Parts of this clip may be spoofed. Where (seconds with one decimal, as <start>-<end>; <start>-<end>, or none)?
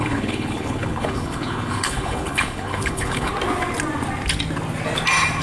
0.0-3.3